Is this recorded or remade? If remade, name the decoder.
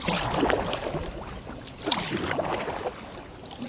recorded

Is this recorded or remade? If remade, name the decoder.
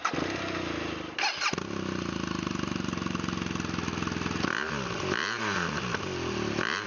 recorded